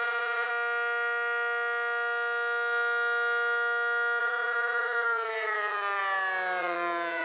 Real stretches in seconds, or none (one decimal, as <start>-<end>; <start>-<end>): 0.5-4.2; 6.0-6.6